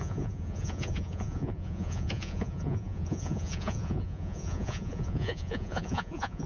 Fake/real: fake